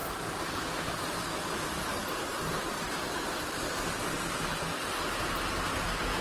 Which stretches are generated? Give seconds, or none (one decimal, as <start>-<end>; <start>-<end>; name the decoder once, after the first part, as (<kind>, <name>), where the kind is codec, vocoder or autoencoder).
0.0-1.2 (vocoder, BigVGAN v2); 2.0-3.4